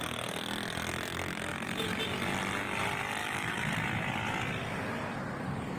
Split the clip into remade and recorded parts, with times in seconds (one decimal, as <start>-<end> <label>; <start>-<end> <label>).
0.0-1.5 recorded; 1.5-2.0 remade; 2.0-3.2 recorded; 3.2-3.7 remade; 3.7-5.8 recorded